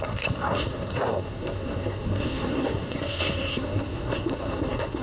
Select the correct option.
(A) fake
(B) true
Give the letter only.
A